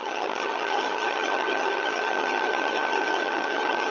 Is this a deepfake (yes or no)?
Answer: yes